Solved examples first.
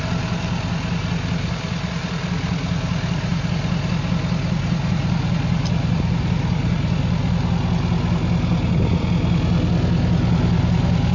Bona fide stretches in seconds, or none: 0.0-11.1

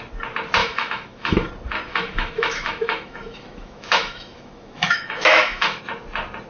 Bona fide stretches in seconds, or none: 0.0-0.6; 1.5-1.9; 5.8-6.5

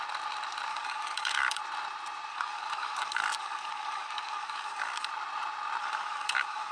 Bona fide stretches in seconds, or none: 0.0-0.7; 1.6-2.3; 5.1-5.8

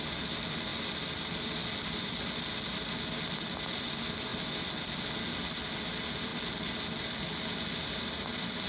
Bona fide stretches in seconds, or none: 0.0-8.7

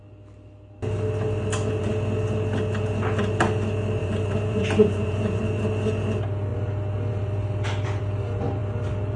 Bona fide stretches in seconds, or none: 0.0-4.0; 5.4-9.2